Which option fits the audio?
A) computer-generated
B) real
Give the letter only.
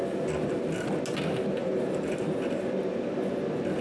B